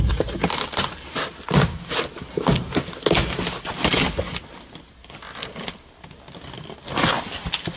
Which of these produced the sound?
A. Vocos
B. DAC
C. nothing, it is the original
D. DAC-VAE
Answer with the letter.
C